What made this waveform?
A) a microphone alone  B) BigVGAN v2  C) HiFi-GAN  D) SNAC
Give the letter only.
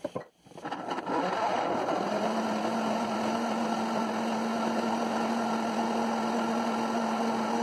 A